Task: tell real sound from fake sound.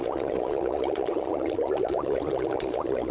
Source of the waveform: fake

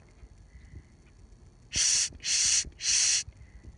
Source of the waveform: real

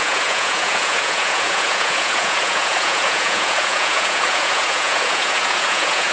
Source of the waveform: fake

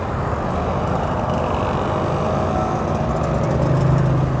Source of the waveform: real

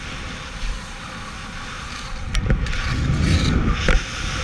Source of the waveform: real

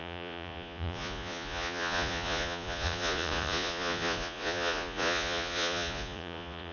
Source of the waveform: fake